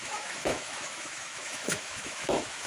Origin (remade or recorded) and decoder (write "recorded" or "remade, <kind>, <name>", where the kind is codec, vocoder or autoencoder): remade, autoencoder, DAC-VAE